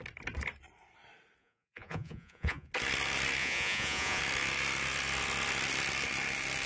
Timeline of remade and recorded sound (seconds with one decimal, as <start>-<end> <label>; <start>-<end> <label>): 0.0-1.4 recorded; 1.4-2.7 remade; 2.7-3.4 recorded; 3.4-4.2 remade; 4.2-6.7 recorded